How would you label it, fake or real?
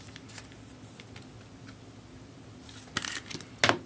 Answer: real